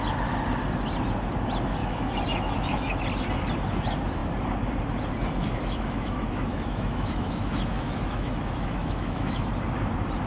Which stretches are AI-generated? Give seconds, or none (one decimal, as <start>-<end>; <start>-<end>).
1.8-3.0; 5.4-9.5